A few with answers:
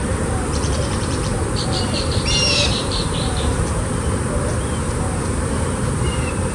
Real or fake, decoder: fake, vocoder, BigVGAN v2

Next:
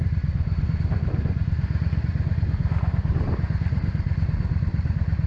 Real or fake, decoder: fake, vocoder, BigVGAN v2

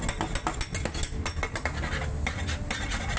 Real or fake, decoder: real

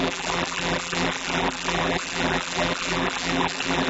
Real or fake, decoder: fake, vocoder, BigVGAN v2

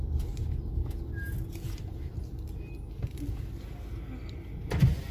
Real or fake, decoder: real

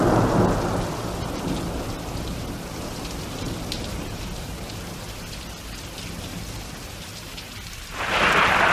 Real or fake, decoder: real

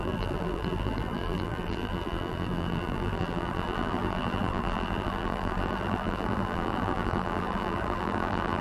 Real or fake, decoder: fake, vocoder, BigVGAN v2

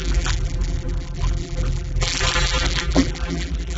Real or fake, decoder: fake, vocoder, BigVGAN v2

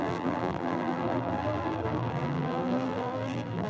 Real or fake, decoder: fake, vocoder, BigVGAN v2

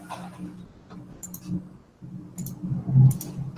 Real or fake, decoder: real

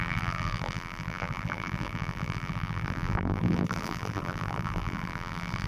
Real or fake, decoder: fake, vocoder, BigVGAN v2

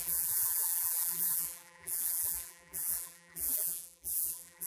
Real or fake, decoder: fake, vocoder, BigVGAN v2